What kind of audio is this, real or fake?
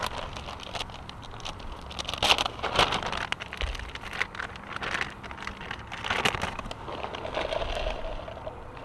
real